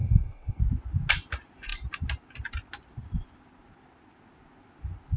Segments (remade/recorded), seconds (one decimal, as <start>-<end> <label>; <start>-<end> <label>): 0.0-0.6 remade; 0.6-5.2 recorded